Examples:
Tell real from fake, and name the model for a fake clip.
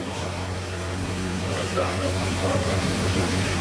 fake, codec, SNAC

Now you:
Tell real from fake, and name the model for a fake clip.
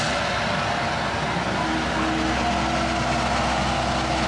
real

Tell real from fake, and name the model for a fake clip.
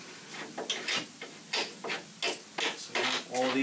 real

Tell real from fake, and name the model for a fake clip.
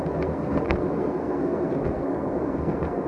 fake, codec, SNAC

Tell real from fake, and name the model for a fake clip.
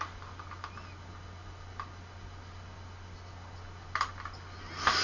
real